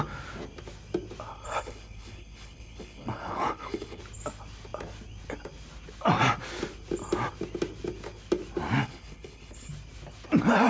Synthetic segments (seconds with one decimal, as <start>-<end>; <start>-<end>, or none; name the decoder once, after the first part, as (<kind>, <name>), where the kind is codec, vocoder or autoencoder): 1.3-4.0 (codec, HILCodec); 8.8-9.7